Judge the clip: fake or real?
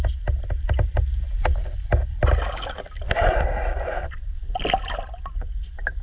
real